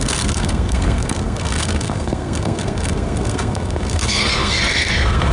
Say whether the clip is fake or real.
fake